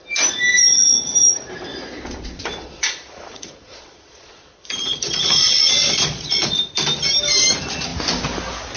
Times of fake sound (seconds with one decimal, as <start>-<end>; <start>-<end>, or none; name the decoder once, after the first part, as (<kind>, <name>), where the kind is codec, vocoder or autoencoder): 1.7-6.6 (vocoder, Vocos)